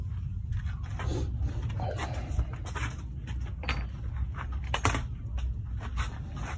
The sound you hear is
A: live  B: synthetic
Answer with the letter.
A